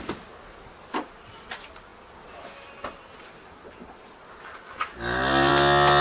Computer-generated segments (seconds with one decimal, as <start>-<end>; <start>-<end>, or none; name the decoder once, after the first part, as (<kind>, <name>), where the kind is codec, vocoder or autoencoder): none